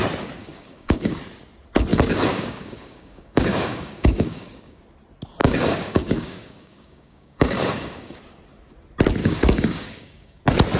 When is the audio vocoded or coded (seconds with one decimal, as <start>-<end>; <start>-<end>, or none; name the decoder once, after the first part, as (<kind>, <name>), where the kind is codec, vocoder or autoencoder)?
0.4-1.2 (codec, DAC); 1.9-4.8; 5.4-8.2; 9.2-10.4